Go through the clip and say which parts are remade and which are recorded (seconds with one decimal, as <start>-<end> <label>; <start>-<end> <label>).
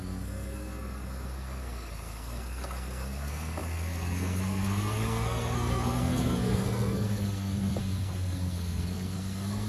0.0-9.7 remade